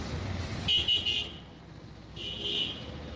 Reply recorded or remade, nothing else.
recorded